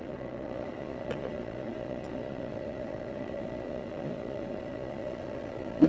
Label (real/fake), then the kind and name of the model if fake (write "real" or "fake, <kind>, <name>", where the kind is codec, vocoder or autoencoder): fake, vocoder, Vocos